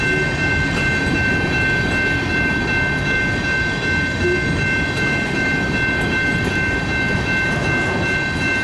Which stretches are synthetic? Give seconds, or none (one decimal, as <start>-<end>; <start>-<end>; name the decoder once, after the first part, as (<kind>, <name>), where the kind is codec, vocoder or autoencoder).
6.3-6.9 (vocoder, BigVGAN v2)

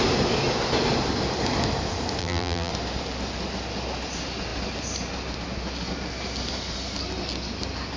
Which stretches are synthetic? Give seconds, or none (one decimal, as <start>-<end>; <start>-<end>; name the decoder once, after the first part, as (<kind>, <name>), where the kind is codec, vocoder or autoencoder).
2.2-2.7 (vocoder, BigVGAN v2)

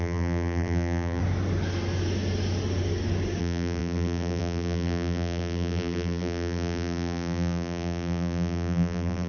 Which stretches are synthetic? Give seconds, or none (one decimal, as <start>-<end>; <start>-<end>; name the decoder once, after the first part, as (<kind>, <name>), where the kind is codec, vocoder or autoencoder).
0.0-1.2 (vocoder, BigVGAN v2); 3.4-9.3

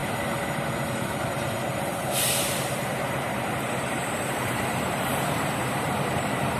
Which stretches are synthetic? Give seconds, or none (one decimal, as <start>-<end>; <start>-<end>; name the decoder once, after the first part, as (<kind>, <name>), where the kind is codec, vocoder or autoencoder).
0.7-6.6 (vocoder, BigVGAN v2)

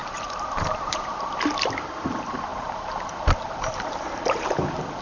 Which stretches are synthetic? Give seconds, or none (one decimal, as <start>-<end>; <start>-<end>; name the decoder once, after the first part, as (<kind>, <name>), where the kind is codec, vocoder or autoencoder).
0.0-0.7 (vocoder, BigVGAN v2); 2.5-5.0

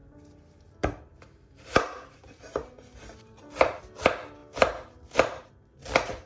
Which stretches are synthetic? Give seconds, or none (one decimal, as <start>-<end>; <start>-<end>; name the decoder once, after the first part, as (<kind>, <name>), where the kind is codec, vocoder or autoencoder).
0.0-3.8 (vocoder, BigVGAN v2); 4.4-5.5

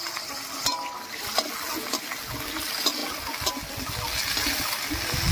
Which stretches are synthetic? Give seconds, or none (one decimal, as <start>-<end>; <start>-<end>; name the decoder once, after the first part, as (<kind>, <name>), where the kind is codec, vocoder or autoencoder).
none

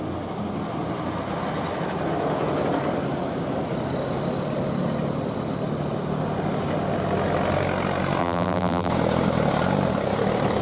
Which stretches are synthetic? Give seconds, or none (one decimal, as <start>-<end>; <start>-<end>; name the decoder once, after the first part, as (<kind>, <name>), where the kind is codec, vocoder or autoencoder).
8.2-8.9 (vocoder, BigVGAN v2)